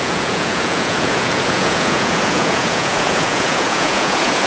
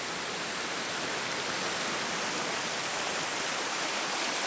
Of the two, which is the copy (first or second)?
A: first